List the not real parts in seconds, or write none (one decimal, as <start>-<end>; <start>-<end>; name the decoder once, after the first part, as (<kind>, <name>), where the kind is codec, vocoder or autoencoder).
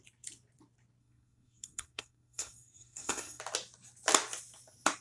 1.0-3.4 (codec, SNAC)